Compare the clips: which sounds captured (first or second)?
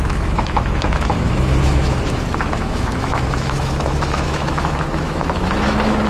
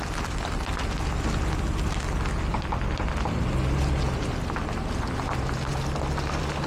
second